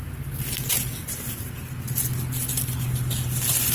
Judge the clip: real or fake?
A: real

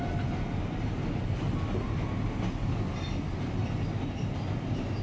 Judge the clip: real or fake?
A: real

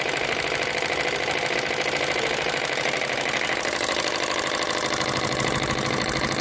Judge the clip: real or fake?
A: real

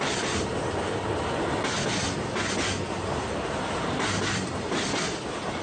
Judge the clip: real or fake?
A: real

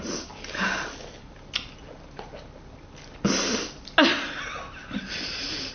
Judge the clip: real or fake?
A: real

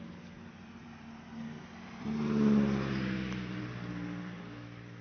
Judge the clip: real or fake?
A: real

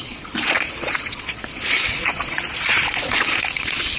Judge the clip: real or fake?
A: fake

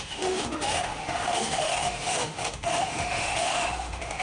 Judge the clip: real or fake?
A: fake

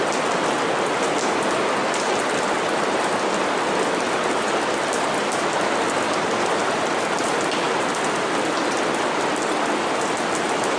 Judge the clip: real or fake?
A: real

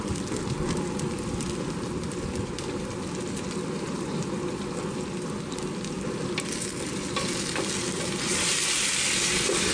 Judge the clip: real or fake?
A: fake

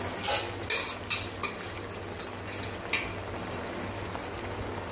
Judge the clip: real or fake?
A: real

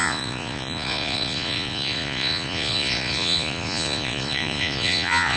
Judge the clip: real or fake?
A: fake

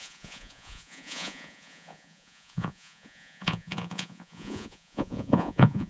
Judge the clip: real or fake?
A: fake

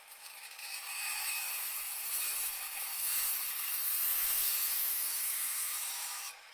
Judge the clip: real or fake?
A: fake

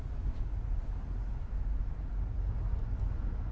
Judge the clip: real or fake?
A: real